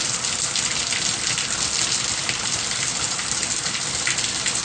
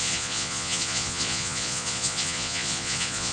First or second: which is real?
first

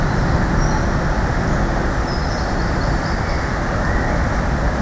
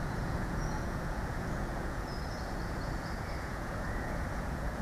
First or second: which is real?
first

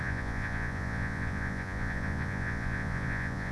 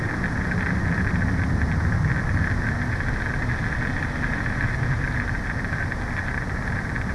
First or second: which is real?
second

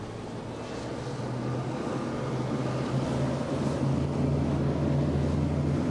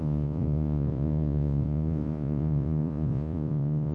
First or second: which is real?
first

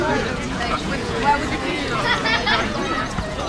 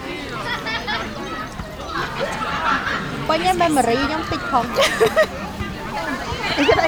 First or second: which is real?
second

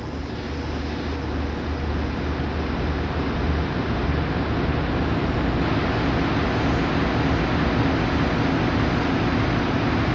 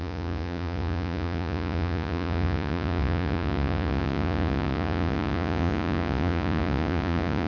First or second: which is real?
first